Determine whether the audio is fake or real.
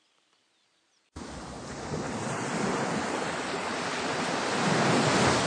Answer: real